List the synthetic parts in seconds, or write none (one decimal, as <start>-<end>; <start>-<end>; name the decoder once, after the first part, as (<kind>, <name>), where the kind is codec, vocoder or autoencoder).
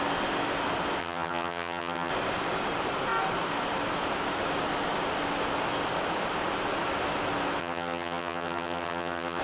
1.0-2.1 (vocoder, HiFi-GAN); 7.6-9.4